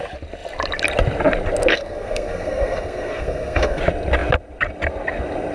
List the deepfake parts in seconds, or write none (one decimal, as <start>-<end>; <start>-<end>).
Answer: 1.7-3.8